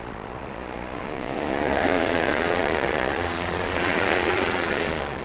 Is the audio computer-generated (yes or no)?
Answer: yes